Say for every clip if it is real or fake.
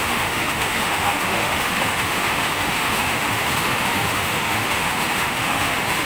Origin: fake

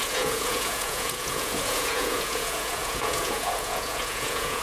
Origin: fake